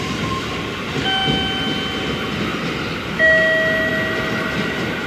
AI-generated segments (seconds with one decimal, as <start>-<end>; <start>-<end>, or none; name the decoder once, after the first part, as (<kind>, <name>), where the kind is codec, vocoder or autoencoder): none